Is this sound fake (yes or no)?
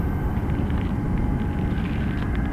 no